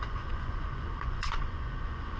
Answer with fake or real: fake